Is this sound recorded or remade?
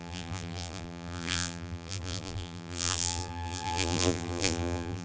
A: remade